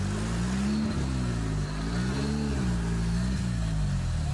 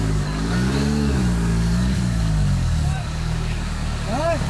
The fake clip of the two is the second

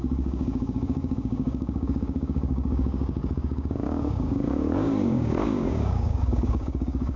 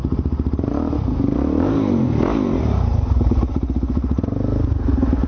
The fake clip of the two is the first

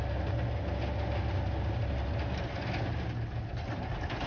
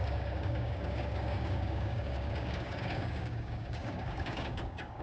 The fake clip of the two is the second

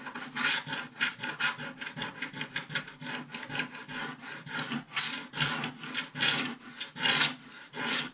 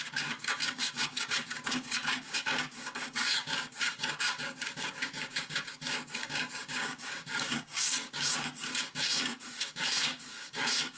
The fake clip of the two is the second